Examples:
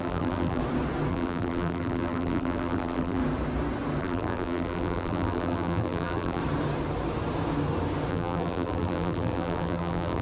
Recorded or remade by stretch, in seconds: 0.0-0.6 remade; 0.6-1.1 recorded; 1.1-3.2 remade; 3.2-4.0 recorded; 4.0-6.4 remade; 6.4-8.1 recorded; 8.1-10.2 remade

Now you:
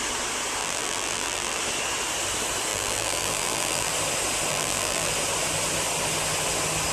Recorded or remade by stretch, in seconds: 0.0-0.6 recorded; 0.6-1.6 remade; 1.6-2.7 recorded; 2.7-3.9 remade; 3.9-4.5 recorded; 4.5-5.1 remade; 5.1-6.9 recorded

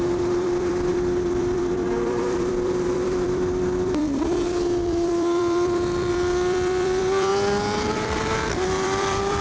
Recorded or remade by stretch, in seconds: 0.0-7.3 remade; 7.3-7.9 recorded; 7.9-9.4 remade

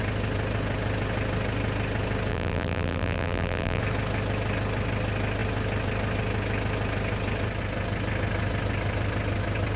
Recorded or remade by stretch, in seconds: 0.0-2.3 recorded; 2.3-3.8 remade; 3.8-9.8 recorded